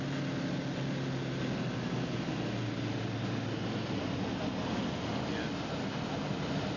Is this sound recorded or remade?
recorded